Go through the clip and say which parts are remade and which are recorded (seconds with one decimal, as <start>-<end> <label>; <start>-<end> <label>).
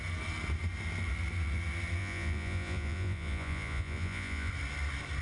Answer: 0.0-2.0 recorded; 2.0-4.5 remade; 4.5-5.2 recorded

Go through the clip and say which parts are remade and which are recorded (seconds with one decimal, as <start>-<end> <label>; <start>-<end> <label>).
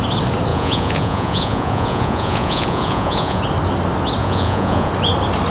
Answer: 0.0-0.5 recorded; 0.5-3.4 remade; 3.4-4.2 recorded; 4.2-4.9 remade; 4.9-5.5 recorded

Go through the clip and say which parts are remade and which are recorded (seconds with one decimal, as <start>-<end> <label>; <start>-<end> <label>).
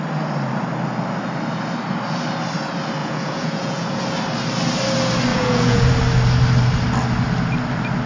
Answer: 0.0-3.0 recorded; 3.0-4.0 remade; 4.0-5.3 recorded; 5.3-5.9 remade; 5.9-8.1 recorded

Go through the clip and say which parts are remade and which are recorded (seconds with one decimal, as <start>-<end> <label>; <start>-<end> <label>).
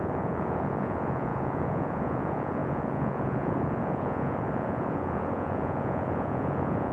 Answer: 0.0-6.9 remade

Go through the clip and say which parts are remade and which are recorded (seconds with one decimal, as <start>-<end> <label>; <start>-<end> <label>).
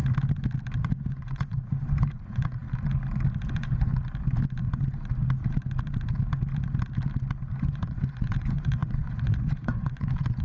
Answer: 0.0-0.8 recorded; 0.8-2.6 remade; 2.6-3.5 recorded; 3.5-3.9 remade; 3.9-7.6 recorded; 7.6-10.4 remade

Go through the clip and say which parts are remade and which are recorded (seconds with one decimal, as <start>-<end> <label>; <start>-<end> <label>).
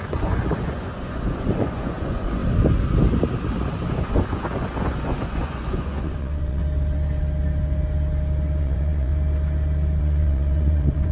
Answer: 0.0-2.4 remade; 2.4-3.9 recorded; 3.9-6.6 remade; 6.6-8.6 recorded; 8.6-9.1 remade; 9.1-10.0 recorded; 10.0-11.1 remade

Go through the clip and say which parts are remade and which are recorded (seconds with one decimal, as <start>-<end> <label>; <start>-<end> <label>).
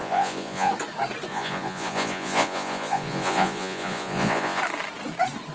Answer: 0.0-0.7 remade; 0.7-1.3 recorded; 1.3-4.6 remade; 4.6-5.5 recorded